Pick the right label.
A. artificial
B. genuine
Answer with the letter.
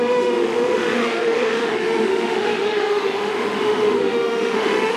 A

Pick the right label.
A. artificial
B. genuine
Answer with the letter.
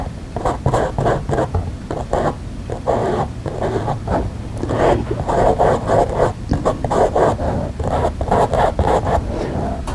B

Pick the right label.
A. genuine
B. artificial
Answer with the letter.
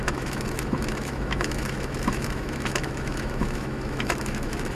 B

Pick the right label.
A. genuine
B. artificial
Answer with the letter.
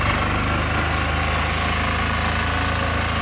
A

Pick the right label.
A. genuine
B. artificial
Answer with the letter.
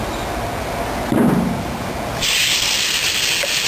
A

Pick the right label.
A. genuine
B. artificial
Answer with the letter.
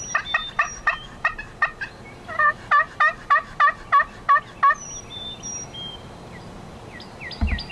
A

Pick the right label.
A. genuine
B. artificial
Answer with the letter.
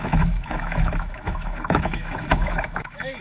B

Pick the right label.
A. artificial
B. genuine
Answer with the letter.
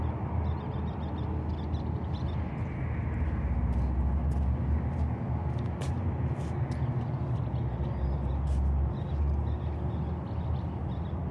B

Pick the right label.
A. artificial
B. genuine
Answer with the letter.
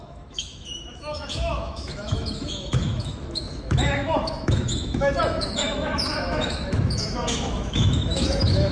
A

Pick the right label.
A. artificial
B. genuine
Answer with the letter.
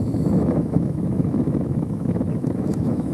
A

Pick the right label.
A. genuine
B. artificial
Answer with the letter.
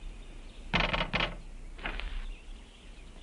A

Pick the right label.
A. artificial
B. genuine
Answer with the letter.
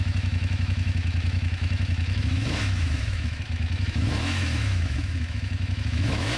A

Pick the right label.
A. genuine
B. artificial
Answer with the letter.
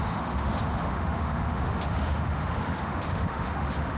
B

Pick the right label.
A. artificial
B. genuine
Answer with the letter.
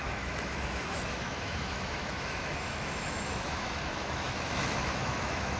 A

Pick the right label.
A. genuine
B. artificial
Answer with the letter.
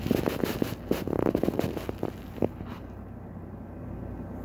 A